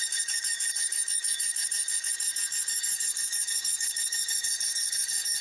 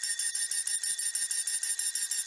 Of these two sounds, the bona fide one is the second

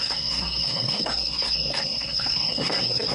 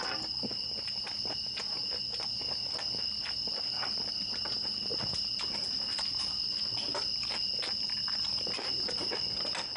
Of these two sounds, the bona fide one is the second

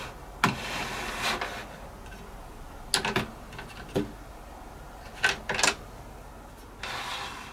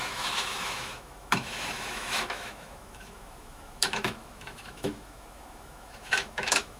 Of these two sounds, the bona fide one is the first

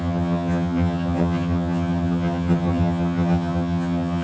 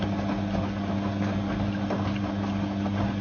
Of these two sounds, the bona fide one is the second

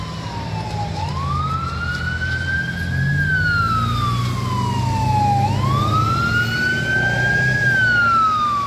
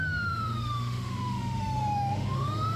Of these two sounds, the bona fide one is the first